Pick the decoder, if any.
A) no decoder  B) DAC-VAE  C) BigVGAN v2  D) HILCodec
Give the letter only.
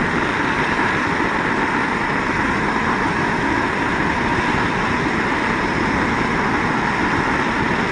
A